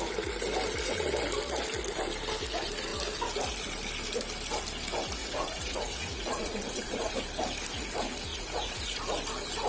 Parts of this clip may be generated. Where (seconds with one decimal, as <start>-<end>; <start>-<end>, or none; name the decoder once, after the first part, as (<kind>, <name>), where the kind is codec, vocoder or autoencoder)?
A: 5.2-7.1 (vocoder, Vocos); 8.3-9.0